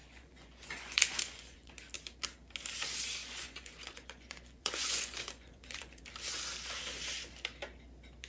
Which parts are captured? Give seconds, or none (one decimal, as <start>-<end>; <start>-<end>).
1.7-3.2; 6.0-8.3

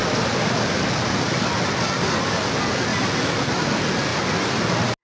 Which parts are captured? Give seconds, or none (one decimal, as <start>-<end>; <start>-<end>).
0.0-4.1; 4.6-5.0

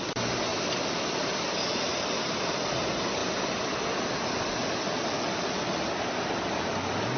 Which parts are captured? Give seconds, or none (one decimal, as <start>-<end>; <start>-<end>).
0.0-7.2

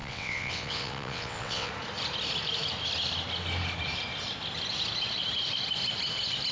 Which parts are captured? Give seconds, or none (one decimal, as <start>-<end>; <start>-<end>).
1.7-6.5

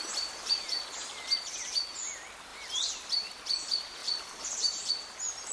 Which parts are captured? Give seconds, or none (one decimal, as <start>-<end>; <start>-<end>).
0.0-2.5; 3.1-4.0; 4.9-5.5

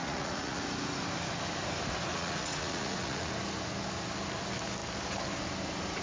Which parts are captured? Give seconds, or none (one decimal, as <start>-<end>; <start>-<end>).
0.6-2.1; 3.3-6.0

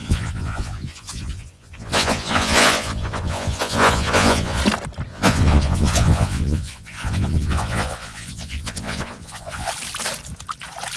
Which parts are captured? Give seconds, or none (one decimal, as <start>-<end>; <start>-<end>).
4.6-5.1; 9.7-11.0